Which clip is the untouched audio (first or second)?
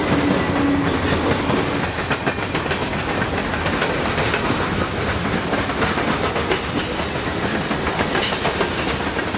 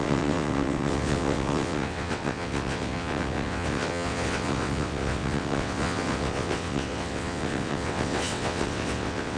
first